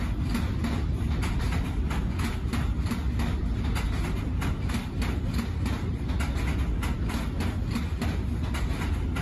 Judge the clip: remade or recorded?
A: recorded